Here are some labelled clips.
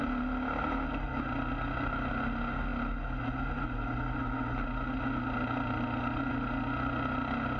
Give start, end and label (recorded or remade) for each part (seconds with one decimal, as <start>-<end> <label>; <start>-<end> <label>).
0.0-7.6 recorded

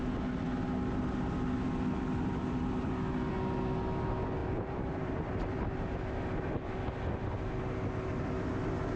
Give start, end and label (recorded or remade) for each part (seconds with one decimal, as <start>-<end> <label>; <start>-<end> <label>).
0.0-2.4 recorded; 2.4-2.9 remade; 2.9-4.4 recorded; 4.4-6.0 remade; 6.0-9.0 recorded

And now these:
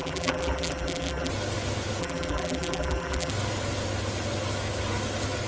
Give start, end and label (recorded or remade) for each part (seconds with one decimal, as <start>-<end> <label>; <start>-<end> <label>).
0.0-1.3 remade; 1.3-2.0 recorded; 2.0-3.3 remade; 3.3-5.5 recorded